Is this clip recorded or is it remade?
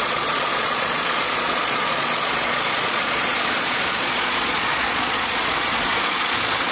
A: remade